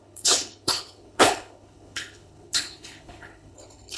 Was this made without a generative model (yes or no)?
no